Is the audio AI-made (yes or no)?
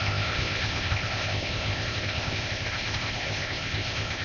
yes